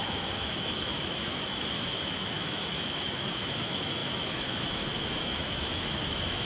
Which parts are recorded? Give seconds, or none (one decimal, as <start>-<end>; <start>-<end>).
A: none